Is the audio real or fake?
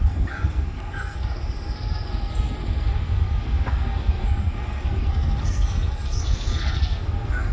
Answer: fake